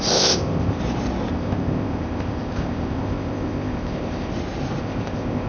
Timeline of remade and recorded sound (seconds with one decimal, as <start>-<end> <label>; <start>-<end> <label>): 0.0-0.8 remade; 0.8-1.3 recorded; 1.3-4.3 remade; 4.3-4.8 recorded; 4.8-5.5 remade

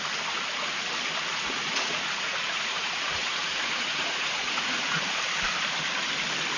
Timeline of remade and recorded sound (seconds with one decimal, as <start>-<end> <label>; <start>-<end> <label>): 0.0-1.3 recorded; 1.3-5.0 remade; 5.0-6.6 recorded